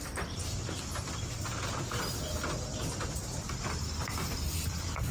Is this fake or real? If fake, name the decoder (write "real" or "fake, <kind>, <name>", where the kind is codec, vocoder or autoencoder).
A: real